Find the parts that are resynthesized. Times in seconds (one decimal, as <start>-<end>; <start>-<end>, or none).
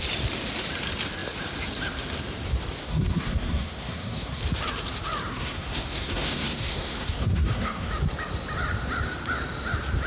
2.8-4.4; 5.3-7.9